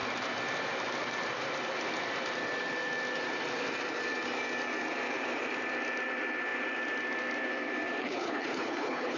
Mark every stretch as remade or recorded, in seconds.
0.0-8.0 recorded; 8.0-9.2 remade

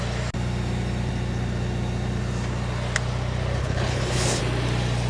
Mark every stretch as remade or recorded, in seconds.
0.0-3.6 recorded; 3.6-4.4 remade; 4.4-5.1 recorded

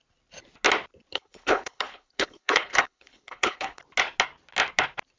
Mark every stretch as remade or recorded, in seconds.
0.0-1.1 recorded; 1.1-3.8 remade; 3.8-5.2 recorded

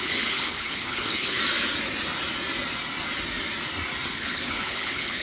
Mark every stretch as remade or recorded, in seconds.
0.0-1.4 remade; 1.4-4.1 recorded; 4.1-5.2 remade

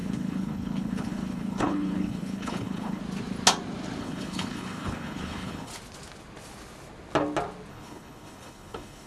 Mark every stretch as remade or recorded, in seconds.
0.0-3.0 remade; 3.0-4.0 recorded; 4.0-5.7 remade; 5.7-7.7 recorded; 7.7-9.1 remade